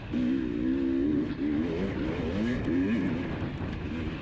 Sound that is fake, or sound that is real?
real